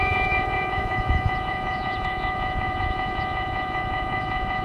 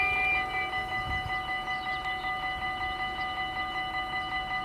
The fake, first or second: first